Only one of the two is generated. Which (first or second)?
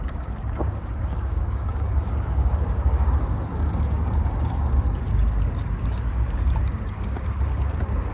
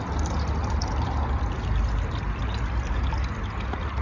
first